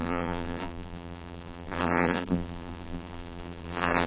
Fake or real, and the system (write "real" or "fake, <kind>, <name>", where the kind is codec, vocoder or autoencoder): fake, vocoder, BigVGAN v2